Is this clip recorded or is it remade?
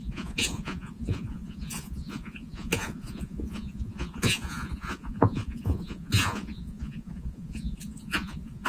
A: remade